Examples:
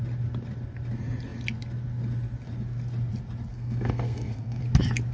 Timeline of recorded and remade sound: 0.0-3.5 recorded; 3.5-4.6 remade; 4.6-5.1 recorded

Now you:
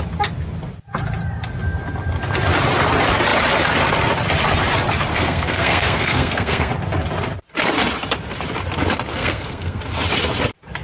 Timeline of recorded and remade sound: 0.0-5.1 recorded; 5.1-6.7 remade; 6.7-9.1 recorded; 9.1-9.8 remade; 9.8-10.8 recorded

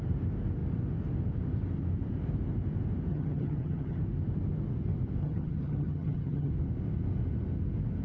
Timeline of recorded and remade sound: 0.0-3.1 recorded; 3.1-4.0 remade; 4.0-5.2 recorded; 5.2-6.5 remade; 6.5-8.0 recorded

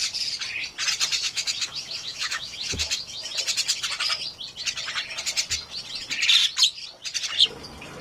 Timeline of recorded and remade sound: 0.0-1.1 recorded; 1.1-3.3 remade; 3.3-8.0 recorded

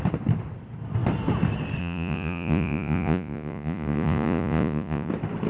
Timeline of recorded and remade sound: 0.0-1.8 recorded; 1.8-5.1 remade; 5.1-5.5 recorded